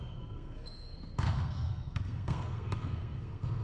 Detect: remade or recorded remade